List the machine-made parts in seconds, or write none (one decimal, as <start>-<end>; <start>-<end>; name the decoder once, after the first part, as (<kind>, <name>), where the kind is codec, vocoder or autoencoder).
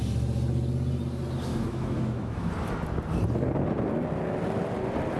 1.5-2.5 (autoencoder, DAC-VAE)